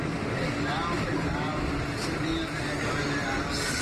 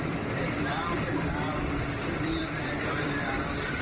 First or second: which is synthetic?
second